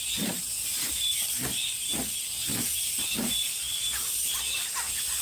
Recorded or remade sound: recorded